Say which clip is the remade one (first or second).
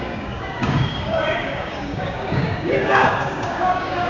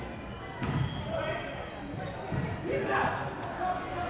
first